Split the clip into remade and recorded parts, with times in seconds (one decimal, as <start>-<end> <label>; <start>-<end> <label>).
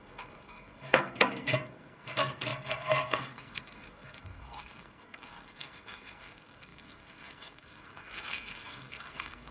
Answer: 0.0-9.5 remade